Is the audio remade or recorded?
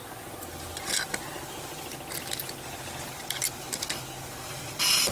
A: recorded